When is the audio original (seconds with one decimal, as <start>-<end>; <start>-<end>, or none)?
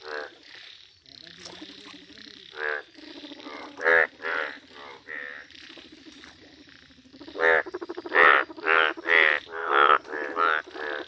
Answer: 0.0-3.9; 5.5-7.1; 8.1-9.6; 10.6-11.1